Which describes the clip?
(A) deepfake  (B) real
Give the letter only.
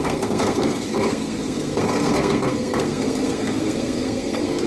A